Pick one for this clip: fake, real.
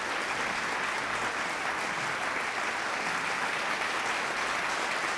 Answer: real